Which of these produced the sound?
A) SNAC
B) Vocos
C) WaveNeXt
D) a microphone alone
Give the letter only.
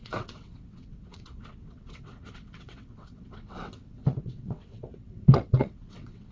C